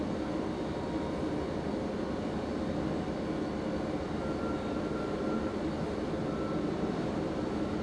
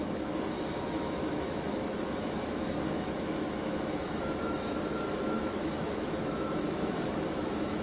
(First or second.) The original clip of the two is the first